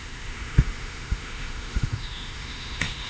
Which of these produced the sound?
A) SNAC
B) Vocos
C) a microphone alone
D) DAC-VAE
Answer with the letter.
D